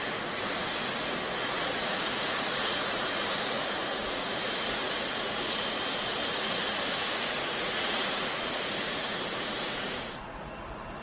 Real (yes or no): no